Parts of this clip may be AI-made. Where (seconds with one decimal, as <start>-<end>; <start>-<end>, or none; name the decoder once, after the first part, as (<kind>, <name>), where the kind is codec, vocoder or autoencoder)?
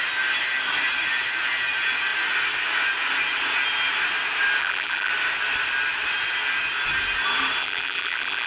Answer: 4.6-5.1 (vocoder, BigVGAN v2); 7.6-8.5